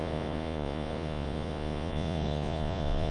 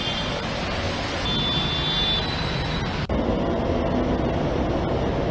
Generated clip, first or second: first